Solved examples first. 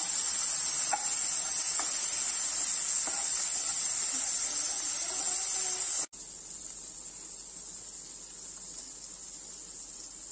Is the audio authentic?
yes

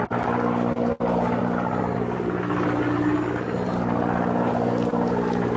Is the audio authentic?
yes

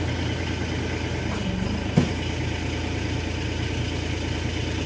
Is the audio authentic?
yes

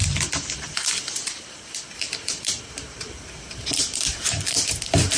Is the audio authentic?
no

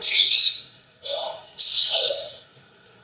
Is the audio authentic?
no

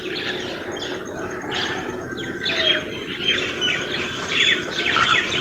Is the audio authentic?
yes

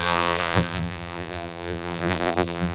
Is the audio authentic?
no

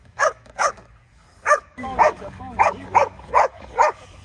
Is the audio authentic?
no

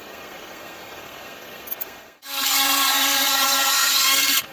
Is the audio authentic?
no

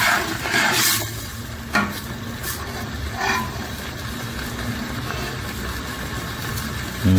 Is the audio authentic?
no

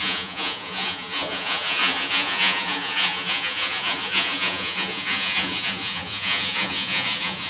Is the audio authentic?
no